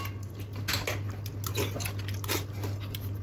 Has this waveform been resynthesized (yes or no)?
no